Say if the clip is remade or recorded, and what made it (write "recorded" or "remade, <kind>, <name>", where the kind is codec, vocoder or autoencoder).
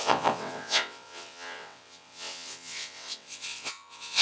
remade, vocoder, WaveNeXt